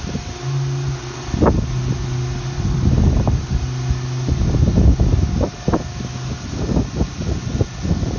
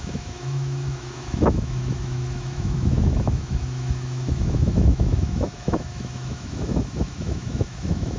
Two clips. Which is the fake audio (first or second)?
second